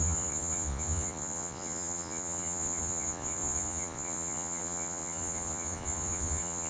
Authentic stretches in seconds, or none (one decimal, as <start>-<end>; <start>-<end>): none